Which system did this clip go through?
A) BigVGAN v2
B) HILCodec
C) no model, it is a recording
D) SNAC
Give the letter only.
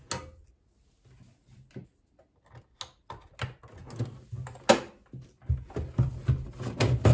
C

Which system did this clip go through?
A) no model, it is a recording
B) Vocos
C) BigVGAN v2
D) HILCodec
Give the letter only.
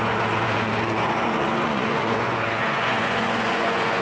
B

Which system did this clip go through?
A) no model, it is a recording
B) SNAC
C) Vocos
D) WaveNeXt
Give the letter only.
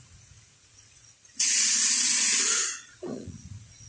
C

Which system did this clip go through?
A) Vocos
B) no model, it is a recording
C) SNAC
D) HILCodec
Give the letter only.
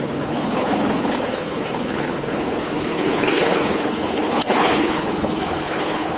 D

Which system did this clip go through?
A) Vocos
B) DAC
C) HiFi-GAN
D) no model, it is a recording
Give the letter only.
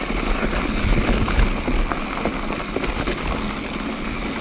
D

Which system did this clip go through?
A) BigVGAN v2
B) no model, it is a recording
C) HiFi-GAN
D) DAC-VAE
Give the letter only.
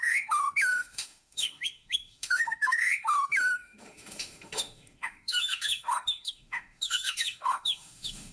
D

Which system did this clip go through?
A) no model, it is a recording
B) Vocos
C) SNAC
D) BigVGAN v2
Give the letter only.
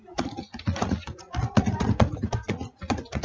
B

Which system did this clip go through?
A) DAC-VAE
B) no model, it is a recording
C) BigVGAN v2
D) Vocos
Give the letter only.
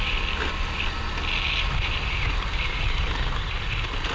B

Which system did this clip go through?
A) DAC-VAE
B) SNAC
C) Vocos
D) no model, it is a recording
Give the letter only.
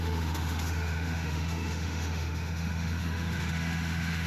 A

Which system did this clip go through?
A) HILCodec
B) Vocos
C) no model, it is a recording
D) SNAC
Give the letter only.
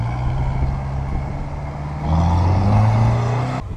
C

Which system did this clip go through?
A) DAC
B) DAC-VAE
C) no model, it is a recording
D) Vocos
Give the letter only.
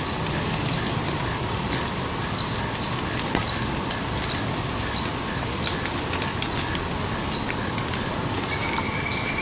C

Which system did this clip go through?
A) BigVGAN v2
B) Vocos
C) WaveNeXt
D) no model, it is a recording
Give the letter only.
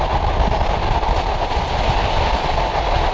D